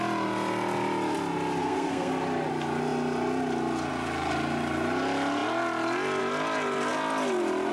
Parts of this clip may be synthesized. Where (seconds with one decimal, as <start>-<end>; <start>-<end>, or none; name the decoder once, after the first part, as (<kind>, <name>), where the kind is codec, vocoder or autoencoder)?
1.6-2.1 (codec, SNAC)